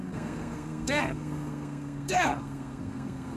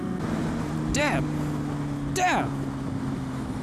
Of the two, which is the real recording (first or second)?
second